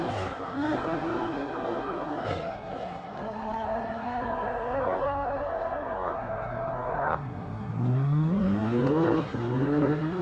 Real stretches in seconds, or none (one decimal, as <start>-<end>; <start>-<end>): none